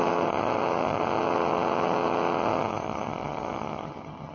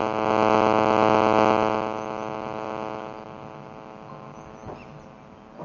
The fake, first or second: first